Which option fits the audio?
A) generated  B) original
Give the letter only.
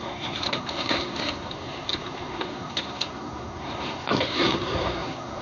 A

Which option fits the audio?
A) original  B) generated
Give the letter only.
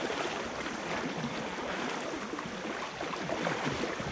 A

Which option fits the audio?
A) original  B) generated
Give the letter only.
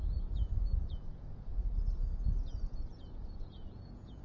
B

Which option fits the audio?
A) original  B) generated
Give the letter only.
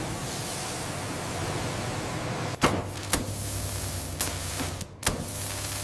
A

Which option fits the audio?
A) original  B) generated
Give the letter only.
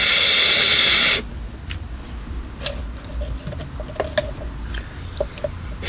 A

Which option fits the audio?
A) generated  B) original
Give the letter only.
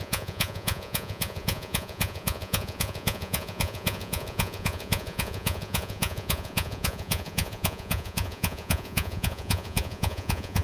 A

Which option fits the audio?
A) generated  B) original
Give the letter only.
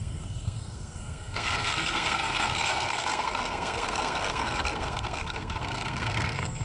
A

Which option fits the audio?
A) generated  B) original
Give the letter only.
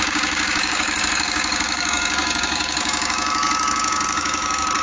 A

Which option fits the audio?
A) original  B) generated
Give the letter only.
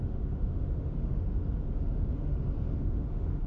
B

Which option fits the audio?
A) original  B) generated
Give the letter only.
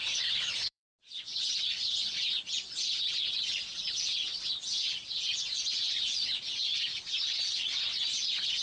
B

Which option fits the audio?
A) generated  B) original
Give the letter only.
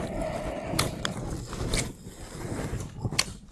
B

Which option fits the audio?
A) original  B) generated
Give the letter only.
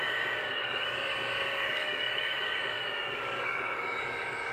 B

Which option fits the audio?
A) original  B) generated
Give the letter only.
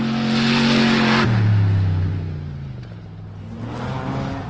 A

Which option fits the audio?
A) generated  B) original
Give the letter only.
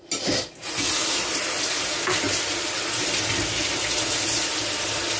B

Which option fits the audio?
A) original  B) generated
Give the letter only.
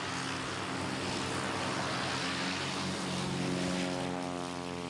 A